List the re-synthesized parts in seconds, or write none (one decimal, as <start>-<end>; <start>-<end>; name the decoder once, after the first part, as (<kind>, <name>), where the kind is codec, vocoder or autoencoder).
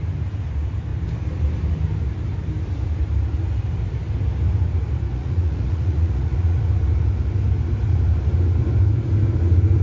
5.1-6.7 (vocoder, Vocos)